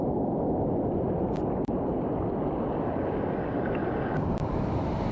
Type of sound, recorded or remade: remade